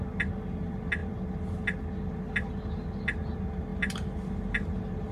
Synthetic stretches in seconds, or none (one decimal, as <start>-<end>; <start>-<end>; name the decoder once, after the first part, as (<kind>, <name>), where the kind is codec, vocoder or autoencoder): none